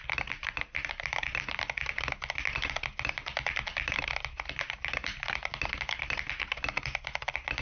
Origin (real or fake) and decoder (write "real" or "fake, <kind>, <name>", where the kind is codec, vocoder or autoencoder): real